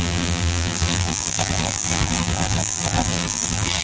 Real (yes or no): no